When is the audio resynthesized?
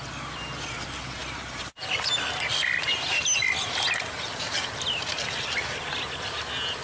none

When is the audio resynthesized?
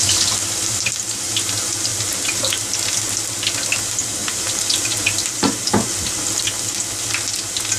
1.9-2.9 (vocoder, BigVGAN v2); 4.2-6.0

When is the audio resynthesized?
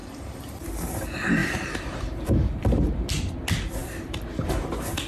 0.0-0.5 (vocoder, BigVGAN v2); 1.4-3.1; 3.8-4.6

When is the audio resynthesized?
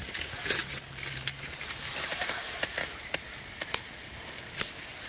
0.6-3.7 (vocoder, BigVGAN v2)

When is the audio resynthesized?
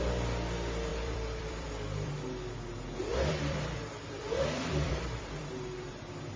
0.9-2.1 (vocoder, BigVGAN v2); 3.1-5.5